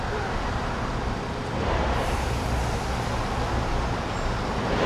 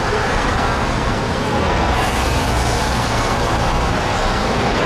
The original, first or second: first